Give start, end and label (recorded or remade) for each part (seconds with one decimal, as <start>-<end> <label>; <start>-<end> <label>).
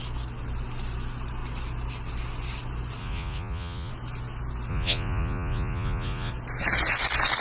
0.0-3.0 recorded; 3.0-3.9 remade; 3.9-4.7 recorded; 4.7-6.3 remade; 6.3-7.4 recorded